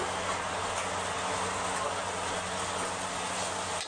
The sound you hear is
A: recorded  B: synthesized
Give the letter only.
A